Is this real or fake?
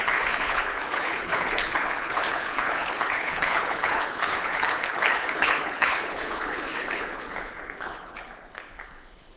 fake